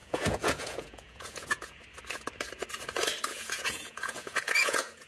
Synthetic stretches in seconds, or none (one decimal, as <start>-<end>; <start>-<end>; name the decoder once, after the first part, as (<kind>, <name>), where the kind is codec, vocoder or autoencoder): 0.0-1.8 (vocoder, Vocos); 3.3-5.1